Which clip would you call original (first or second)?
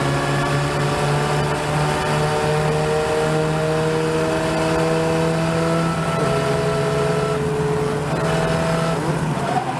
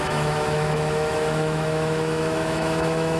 first